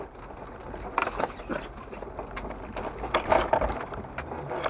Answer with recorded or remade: recorded